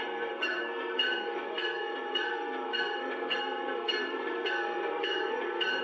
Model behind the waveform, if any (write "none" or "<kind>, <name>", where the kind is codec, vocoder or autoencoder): codec, SNAC